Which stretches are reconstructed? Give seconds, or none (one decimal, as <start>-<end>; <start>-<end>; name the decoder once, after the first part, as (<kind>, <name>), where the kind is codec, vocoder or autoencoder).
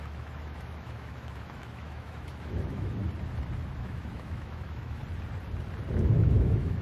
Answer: 0.0-3.0 (autoencoder, DAC-VAE); 3.8-5.0; 6.1-6.8